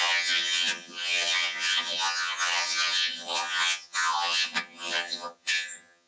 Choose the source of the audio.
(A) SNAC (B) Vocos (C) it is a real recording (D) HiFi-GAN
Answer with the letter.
D